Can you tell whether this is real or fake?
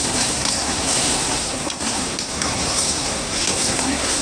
fake